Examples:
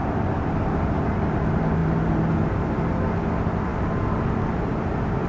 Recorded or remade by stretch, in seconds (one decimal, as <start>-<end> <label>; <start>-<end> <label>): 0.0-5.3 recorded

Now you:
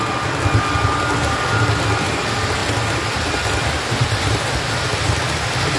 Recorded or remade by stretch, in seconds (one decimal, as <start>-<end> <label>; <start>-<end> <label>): 0.0-5.8 recorded

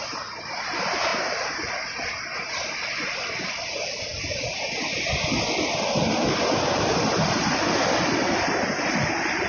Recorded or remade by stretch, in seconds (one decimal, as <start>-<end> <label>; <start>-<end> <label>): 0.0-9.5 recorded